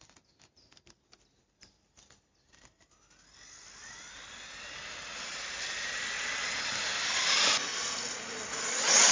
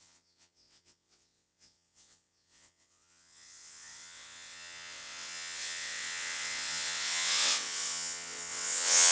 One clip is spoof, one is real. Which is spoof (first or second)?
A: second